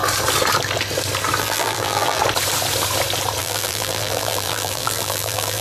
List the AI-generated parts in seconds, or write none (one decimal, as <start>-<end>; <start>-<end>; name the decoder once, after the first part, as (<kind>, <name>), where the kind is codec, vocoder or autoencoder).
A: 1.4-2.2 (vocoder, BigVGAN v2); 3.4-5.6